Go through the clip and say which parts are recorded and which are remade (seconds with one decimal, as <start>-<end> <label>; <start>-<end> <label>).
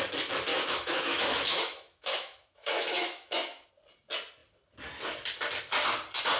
0.0-0.5 recorded; 0.5-3.7 remade; 3.7-6.4 recorded